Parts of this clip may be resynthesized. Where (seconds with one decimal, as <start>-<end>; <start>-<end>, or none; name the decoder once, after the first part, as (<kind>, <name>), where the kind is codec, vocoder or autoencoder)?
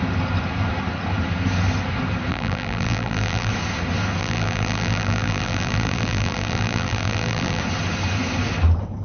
2.3-3.5 (vocoder, BigVGAN v2); 4.2-7.6